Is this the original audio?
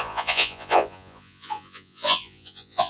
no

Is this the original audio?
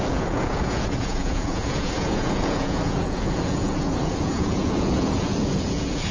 no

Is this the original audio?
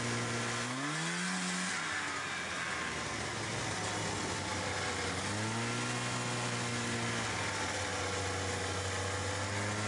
yes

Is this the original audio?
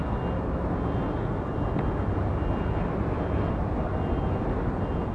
yes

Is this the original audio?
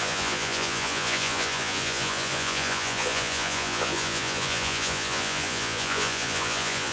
no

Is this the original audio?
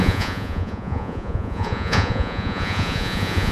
no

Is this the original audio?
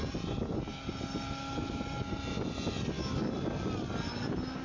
yes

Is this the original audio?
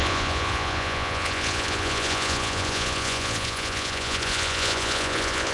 no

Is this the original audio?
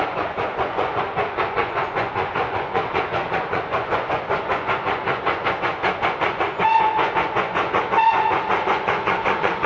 no